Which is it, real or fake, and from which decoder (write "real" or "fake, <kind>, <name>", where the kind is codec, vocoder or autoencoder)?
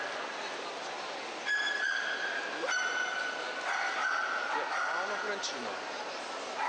real